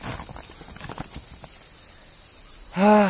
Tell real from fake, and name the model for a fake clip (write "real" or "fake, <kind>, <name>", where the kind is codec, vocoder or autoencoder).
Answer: real